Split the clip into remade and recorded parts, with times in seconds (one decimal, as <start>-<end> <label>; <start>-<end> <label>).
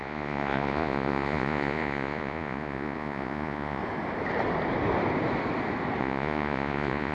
0.0-3.8 remade; 3.8-6.0 recorded; 6.0-7.1 remade